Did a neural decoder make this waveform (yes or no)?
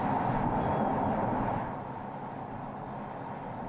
no